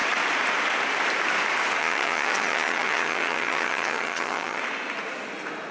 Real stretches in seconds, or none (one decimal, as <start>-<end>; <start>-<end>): 0.0-1.8; 4.6-5.7